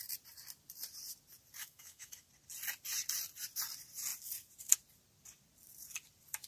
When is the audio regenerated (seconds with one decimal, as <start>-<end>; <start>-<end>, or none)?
1.6-2.3